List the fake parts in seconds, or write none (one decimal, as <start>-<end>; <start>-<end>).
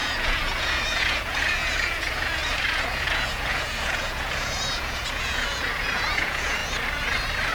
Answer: 0.0-6.6